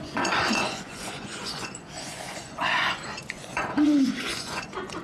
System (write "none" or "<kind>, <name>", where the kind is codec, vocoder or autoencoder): vocoder, Vocos